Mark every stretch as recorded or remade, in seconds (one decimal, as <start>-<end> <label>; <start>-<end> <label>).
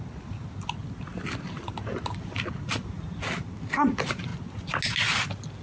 0.0-5.6 recorded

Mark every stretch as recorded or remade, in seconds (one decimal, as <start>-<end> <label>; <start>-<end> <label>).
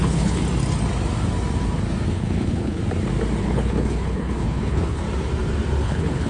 0.0-0.4 remade; 0.4-2.1 recorded; 2.1-2.8 remade; 2.8-3.4 recorded; 3.4-5.0 remade; 5.0-5.8 recorded; 5.8-6.3 remade